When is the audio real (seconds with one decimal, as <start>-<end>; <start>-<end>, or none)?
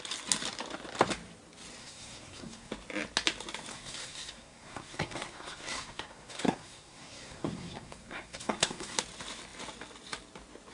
0.0-1.8; 2.7-3.7; 9.0-10.7